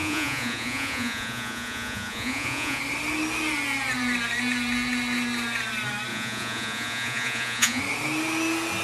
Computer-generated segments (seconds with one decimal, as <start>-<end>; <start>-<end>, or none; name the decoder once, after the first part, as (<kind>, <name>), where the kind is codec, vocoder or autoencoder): 0.0-2.8 (vocoder, Vocos); 6.1-7.8

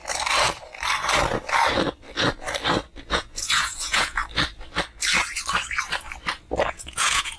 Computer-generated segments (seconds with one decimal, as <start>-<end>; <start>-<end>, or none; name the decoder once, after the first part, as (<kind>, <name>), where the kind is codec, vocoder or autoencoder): 3.1-4.2 (vocoder, Vocos); 6.7-7.4

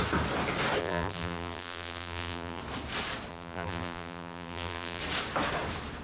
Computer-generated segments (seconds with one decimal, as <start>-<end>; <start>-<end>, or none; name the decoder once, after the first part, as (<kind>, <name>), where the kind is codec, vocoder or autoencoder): 0.8-2.6 (vocoder, BigVGAN v2); 3.3-5.0

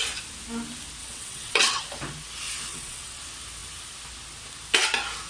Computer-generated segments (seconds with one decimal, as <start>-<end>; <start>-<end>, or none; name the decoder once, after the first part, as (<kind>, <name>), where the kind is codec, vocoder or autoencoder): 1.0-1.8 (vocoder, WaveNeXt); 2.7-3.2

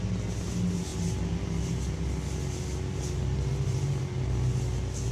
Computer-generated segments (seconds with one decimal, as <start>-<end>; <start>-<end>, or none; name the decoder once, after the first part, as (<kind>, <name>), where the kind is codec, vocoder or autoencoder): none

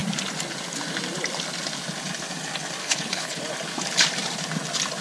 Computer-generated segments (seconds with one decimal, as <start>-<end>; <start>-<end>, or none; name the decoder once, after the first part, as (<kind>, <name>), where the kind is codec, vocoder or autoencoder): 2.8-3.4 (codec, HILCodec)

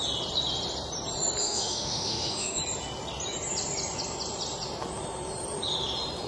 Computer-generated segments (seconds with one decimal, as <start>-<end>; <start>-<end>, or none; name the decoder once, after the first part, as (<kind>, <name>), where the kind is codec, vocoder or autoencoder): 1.4-2.6 (autoencoder, DAC-VAE)

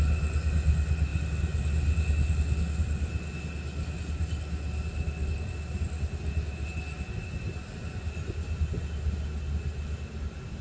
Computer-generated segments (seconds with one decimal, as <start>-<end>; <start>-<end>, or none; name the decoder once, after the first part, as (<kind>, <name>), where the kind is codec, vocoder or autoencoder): none